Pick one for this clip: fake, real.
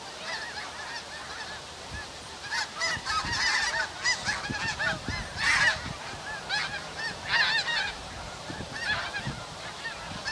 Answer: real